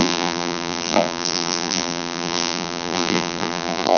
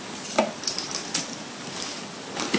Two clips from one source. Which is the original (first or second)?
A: second